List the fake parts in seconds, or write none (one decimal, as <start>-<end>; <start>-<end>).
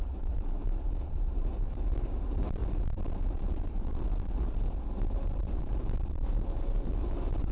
0.0-2.6; 5.3-7.5